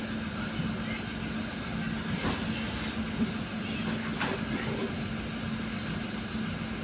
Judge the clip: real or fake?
real